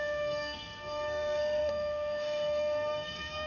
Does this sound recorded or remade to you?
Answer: remade